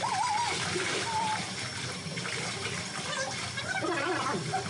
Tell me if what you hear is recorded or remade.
recorded